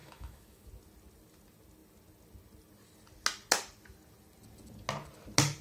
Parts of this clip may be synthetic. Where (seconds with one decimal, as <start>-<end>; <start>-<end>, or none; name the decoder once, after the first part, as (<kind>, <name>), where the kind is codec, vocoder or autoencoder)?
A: 0.0-0.7 (autoencoder, DAC-VAE)